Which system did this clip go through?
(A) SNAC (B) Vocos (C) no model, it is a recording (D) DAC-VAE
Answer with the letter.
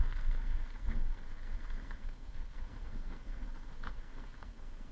A